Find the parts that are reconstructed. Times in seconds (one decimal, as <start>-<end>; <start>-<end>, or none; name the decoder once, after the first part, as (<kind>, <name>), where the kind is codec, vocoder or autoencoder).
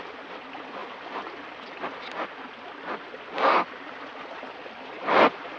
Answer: none